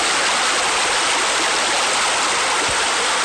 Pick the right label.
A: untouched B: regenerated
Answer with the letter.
A